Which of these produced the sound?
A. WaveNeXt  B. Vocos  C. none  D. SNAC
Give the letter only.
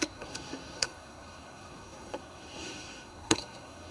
D